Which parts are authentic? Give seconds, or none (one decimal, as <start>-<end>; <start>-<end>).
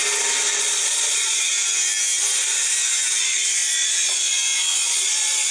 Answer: 0.0-0.6; 1.5-3.2